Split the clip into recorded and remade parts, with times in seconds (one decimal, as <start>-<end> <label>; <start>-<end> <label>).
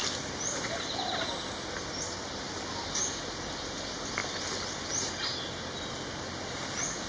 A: 0.0-7.1 recorded